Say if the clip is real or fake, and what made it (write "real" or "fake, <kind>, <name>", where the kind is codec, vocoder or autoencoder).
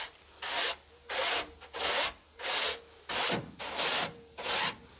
real